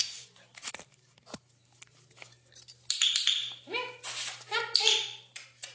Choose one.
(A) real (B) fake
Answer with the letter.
A